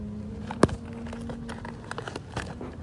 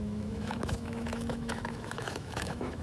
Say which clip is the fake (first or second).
second